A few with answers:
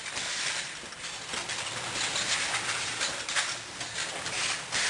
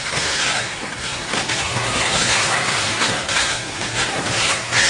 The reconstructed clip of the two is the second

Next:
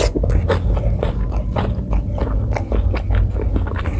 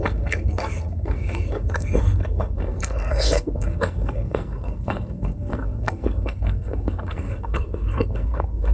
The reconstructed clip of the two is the second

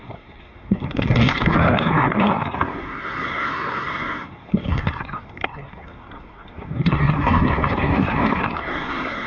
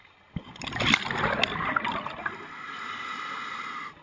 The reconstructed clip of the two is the first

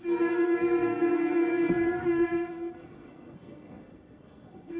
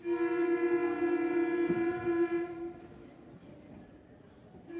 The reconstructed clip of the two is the first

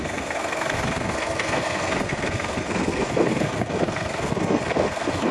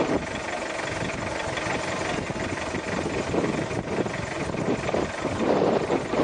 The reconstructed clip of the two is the first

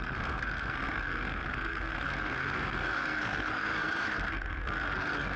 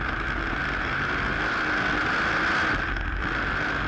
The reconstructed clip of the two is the first